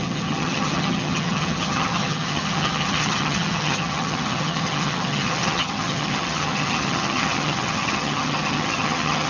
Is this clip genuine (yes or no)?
no